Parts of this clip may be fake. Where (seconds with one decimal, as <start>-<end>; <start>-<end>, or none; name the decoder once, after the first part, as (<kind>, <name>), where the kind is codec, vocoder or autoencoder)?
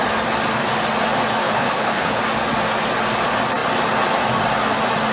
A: 1.4-2.2 (codec, HILCodec)